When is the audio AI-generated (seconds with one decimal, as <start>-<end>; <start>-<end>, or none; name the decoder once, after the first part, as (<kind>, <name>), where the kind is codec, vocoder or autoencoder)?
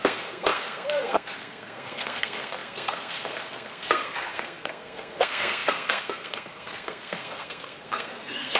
0.0-8.6 (codec, SNAC)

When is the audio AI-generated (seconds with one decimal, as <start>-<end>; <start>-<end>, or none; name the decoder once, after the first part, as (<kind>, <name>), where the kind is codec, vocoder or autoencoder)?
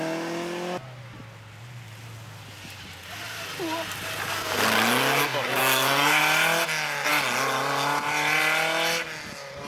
5.6-6.2 (codec, SNAC)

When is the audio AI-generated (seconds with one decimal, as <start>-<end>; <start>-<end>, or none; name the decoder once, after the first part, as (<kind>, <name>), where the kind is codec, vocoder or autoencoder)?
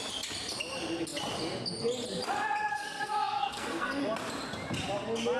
2.7-4.0 (codec, SNAC)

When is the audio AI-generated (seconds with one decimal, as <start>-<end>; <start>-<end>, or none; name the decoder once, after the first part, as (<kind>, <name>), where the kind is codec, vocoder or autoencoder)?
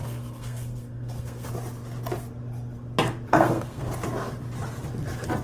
0.0-1.5 (codec, SNAC); 3.3-3.9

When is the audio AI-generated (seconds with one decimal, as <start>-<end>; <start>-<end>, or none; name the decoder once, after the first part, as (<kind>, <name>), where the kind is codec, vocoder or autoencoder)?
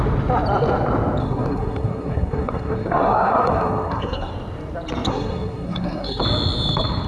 1.2-4.3 (codec, SNAC); 5.1-6.2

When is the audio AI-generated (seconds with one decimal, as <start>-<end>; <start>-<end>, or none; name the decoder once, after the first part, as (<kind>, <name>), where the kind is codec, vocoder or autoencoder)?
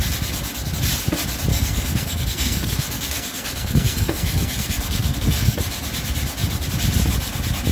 1.5-5.6 (codec, SNAC)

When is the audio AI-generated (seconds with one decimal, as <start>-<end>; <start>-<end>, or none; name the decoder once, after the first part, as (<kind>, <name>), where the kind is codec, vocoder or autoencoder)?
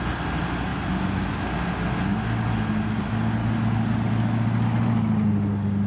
none